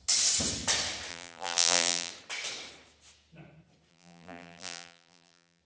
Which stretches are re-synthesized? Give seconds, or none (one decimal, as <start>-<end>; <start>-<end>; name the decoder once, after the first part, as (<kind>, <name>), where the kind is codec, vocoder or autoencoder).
1.1-2.1 (vocoder, BigVGAN v2); 3.9-5.6